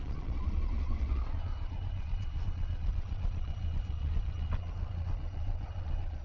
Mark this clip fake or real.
fake